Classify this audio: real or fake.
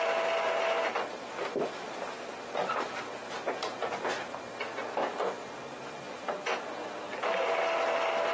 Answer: real